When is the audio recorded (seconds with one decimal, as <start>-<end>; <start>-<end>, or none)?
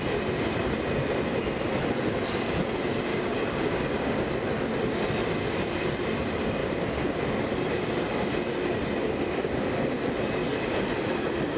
0.0-3.1; 4.3-11.6